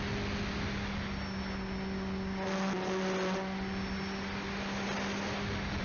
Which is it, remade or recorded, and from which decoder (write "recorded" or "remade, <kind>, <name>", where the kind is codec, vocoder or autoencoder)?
recorded